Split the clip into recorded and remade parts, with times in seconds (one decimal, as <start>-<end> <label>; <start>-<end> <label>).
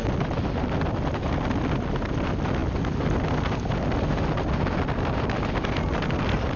0.0-6.6 recorded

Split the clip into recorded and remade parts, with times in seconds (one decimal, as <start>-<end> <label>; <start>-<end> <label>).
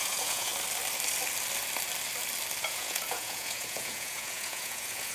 0.0-0.5 remade; 0.5-2.6 recorded; 2.6-5.1 remade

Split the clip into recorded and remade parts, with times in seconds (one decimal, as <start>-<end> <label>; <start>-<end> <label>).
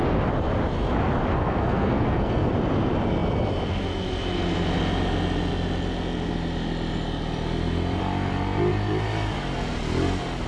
0.0-1.3 recorded; 1.3-2.5 remade; 2.5-10.5 recorded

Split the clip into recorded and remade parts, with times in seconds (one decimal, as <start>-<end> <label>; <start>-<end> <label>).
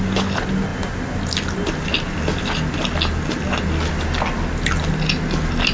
0.0-5.7 recorded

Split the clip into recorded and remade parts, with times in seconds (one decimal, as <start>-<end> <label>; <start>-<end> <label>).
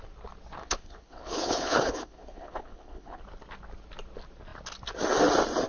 0.0-0.6 recorded; 0.6-3.2 remade; 3.2-5.7 recorded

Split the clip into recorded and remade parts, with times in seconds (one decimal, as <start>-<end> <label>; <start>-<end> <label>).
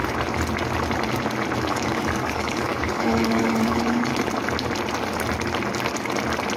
0.0-1.6 recorded; 1.6-4.1 remade; 4.1-6.6 recorded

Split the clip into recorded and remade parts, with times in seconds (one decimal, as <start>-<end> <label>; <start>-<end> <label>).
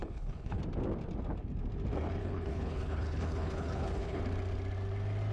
0.0-0.6 remade; 0.6-2.2 recorded; 2.2-4.2 remade; 4.2-5.3 recorded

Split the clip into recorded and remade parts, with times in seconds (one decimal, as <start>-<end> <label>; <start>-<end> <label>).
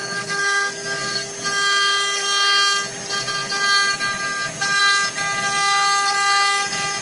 0.0-1.3 remade; 1.3-7.0 recorded